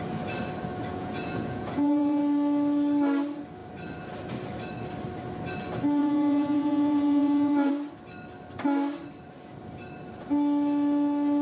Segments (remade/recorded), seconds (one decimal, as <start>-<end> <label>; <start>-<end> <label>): 0.0-0.9 recorded; 0.9-2.2 remade; 2.2-6.0 recorded; 6.0-7.7 remade; 7.7-11.4 recorded